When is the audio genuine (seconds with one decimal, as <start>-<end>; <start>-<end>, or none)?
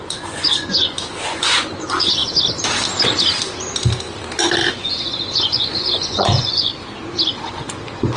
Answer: 2.2-4.7; 6.7-7.5